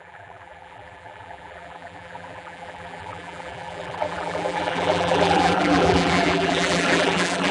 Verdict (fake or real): fake